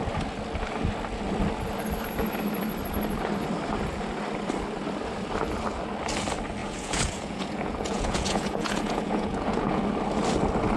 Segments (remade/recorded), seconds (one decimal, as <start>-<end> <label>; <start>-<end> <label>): 0.0-6.6 recorded; 6.6-9.8 remade; 9.8-10.8 recorded